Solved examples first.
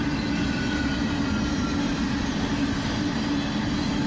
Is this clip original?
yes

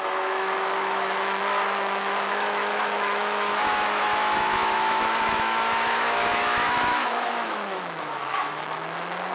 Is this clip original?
no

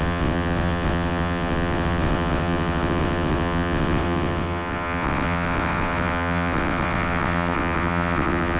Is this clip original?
no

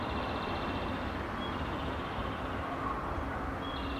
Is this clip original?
yes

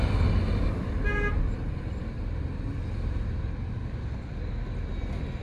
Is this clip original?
yes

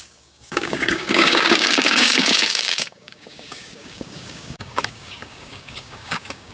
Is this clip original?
no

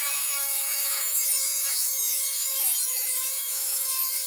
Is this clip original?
no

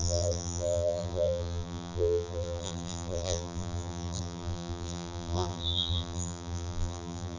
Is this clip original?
no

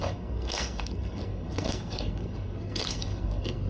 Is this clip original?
no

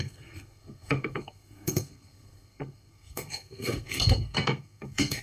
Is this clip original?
no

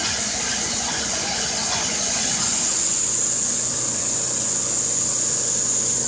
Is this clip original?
no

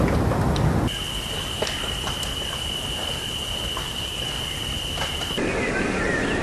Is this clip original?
yes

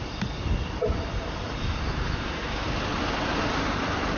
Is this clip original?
yes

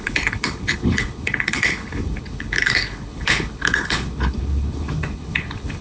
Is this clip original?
no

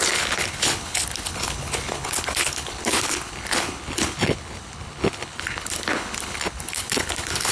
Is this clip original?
no